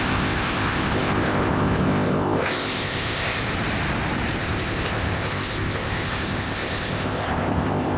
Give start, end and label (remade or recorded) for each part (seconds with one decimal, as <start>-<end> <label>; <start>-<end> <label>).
0.0-3.4 remade; 3.4-4.4 recorded; 4.4-8.0 remade